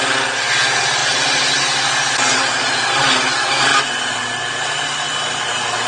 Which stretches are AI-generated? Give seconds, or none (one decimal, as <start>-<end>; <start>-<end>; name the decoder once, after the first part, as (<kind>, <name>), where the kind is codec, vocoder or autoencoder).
none